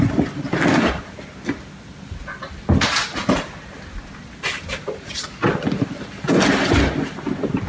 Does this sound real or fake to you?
real